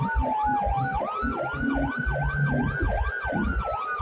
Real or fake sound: real